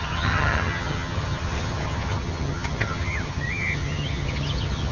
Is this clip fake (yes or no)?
yes